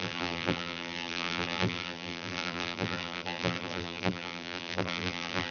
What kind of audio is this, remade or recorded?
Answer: remade